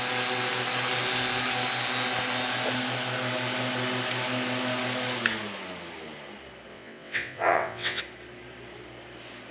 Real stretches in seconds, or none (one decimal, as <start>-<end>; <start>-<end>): 0.0-6.7; 8.0-9.5